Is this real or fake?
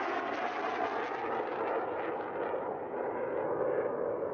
real